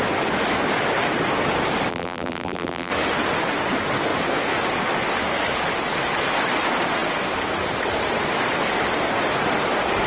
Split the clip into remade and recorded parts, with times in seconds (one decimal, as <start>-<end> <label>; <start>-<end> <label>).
0.0-1.9 recorded; 1.9-2.9 remade; 2.9-10.1 recorded